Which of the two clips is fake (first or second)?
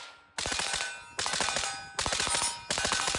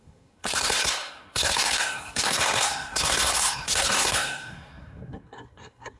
second